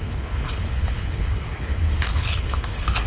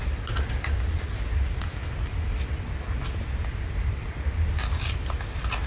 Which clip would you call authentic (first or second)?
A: second